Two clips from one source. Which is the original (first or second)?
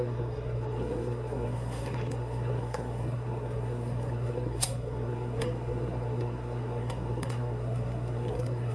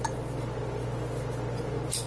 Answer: second